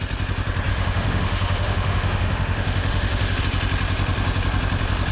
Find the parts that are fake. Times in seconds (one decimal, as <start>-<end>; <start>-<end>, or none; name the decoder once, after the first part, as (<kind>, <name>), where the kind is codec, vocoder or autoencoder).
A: 0.7-3.4 (autoencoder, DAC-VAE)